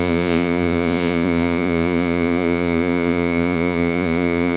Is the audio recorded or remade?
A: remade